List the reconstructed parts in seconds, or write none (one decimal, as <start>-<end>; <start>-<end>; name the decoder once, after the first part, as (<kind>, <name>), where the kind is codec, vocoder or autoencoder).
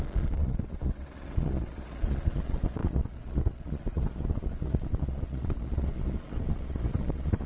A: 0.0-7.5 (vocoder, Vocos)